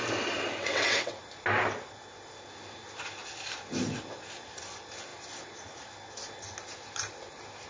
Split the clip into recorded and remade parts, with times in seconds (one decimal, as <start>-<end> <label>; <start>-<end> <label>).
0.0-0.6 recorded; 0.6-1.2 remade; 1.2-7.7 recorded